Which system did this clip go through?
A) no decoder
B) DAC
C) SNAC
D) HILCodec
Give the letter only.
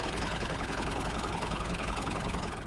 D